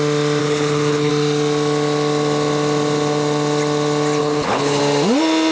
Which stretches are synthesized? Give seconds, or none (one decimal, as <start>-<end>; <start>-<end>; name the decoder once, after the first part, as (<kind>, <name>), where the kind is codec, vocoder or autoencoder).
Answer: 0.4-1.1 (codec, HILCodec); 4.2-4.8